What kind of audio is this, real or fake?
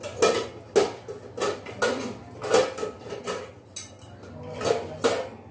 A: real